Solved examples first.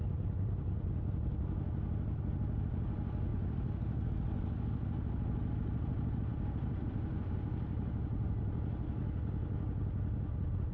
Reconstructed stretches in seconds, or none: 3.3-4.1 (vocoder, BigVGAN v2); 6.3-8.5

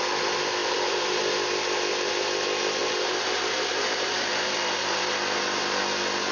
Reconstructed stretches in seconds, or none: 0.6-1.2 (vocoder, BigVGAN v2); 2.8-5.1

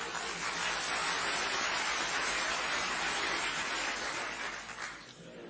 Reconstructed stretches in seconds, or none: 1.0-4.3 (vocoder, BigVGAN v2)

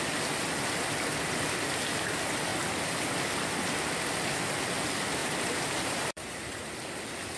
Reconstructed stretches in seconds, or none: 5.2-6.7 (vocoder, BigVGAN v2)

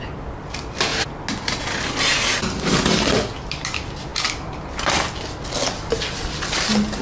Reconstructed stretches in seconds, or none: none